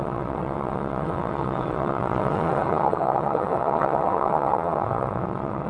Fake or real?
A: fake